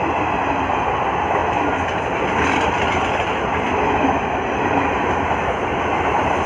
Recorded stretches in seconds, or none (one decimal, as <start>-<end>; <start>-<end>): 0.0-6.5